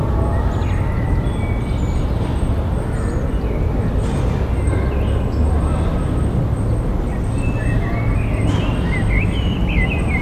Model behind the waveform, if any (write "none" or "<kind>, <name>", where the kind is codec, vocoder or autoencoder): none